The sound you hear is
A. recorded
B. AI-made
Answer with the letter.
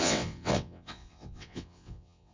B